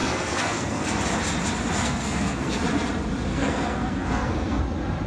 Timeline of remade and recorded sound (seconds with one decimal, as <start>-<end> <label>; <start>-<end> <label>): 0.0-1.0 remade; 1.0-1.8 recorded; 1.8-2.6 remade; 2.6-3.3 recorded; 3.3-4.6 remade; 4.6-5.1 recorded